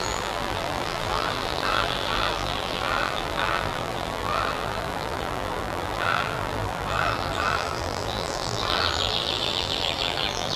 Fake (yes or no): yes